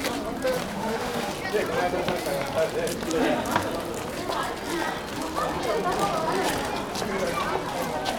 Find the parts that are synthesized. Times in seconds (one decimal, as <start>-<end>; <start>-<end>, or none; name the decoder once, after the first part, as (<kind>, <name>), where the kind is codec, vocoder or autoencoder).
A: 0.7-1.3 (autoencoder, DAC-VAE)